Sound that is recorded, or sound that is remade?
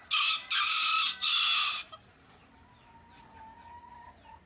recorded